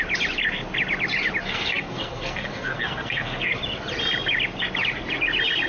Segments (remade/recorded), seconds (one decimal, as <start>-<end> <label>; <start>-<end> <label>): 0.0-1.4 recorded; 1.4-3.5 remade; 3.5-5.7 recorded

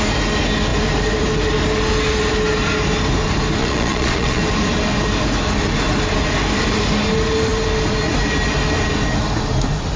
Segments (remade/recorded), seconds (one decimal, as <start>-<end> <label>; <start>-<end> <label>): 0.0-3.6 recorded; 3.6-4.4 remade; 4.4-10.0 recorded

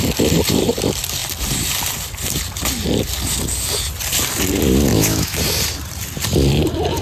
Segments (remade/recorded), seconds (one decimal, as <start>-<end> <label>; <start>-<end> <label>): 0.0-4.9 recorded; 4.9-5.4 remade; 5.4-7.0 recorded

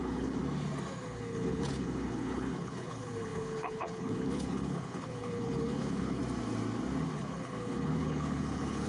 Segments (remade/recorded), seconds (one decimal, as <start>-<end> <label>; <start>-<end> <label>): 0.0-0.4 remade; 0.4-1.0 recorded; 1.0-6.2 remade; 6.2-7.2 recorded; 7.2-8.9 remade

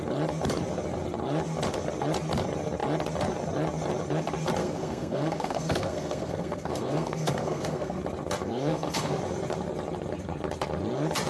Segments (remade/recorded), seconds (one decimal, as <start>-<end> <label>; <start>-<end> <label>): 0.0-4.6 recorded; 4.6-8.0 remade; 8.0-8.4 recorded; 8.4-9.2 remade; 9.2-11.3 recorded

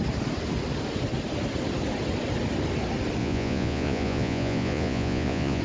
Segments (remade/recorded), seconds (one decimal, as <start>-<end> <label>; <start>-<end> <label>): 0.0-3.2 recorded; 3.2-5.6 remade

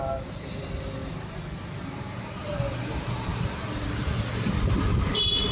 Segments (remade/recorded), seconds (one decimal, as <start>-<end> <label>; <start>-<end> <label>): 0.0-5.5 recorded